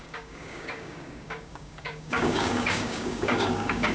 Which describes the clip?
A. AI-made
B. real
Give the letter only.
A